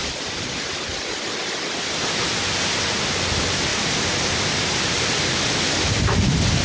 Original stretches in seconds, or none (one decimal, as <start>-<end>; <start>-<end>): 0.0-3.7